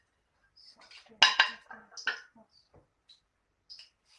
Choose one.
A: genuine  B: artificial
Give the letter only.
A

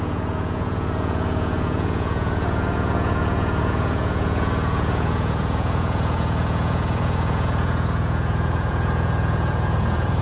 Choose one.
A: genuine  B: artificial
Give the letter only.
B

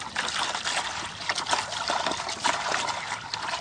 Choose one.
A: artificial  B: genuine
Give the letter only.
B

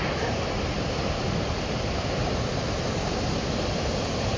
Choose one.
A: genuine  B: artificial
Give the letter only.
A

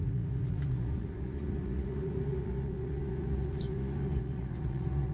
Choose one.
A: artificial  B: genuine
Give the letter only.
A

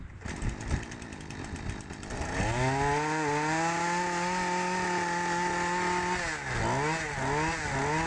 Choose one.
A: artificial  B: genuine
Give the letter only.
B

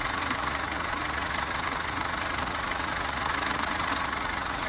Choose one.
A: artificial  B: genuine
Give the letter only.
A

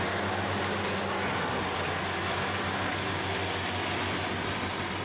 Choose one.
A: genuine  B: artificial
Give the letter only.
A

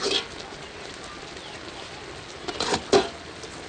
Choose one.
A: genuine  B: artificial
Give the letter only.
A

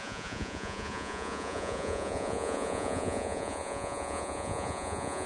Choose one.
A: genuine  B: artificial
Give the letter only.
B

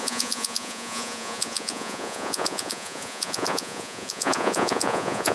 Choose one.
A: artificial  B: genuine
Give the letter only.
A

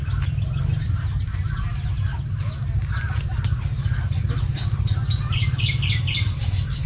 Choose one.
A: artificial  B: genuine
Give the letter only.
B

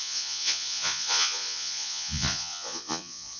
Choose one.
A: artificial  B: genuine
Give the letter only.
A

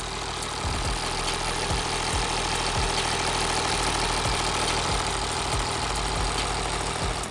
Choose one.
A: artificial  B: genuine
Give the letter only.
B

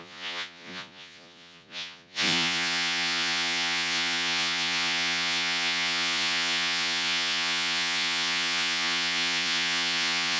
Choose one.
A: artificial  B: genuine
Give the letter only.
A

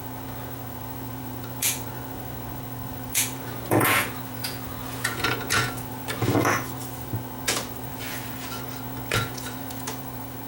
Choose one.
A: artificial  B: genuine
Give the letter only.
A